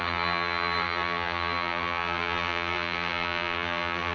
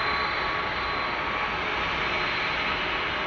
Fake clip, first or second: first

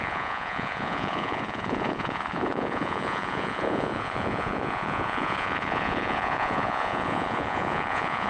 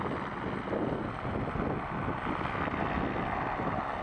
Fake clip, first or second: first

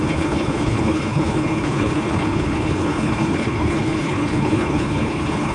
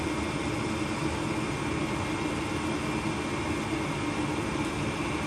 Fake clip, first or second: first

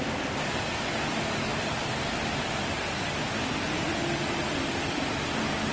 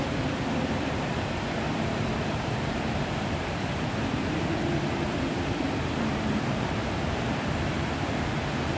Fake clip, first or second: second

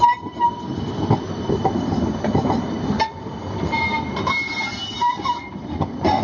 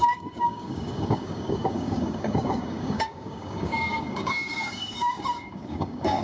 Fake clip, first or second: second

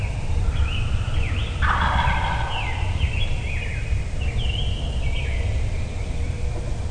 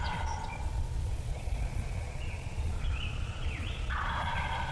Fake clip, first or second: second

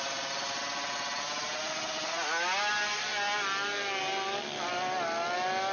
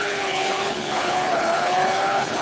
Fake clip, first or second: second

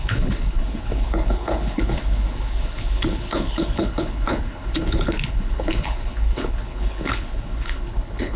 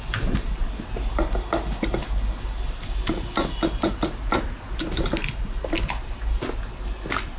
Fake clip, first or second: first